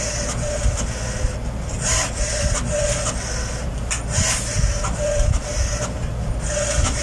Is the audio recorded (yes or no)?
yes